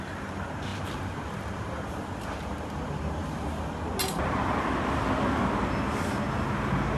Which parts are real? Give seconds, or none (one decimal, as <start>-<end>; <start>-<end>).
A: 0.0-7.0